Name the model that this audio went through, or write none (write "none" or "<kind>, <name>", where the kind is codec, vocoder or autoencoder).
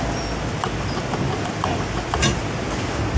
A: none